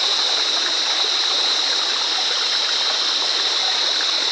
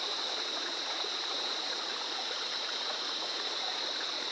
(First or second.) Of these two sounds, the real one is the first